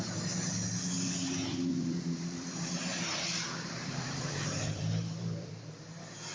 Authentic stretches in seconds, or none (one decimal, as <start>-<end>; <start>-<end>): 0.0-1.7; 5.5-6.3